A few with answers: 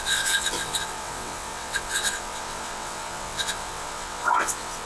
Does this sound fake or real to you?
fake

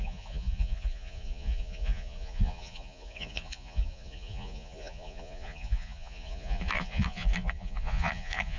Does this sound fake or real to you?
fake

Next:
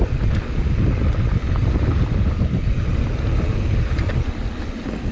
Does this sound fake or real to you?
real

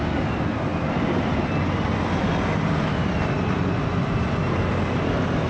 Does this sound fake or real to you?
real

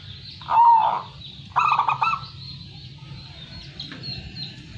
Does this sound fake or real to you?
real